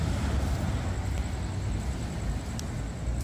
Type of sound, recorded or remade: recorded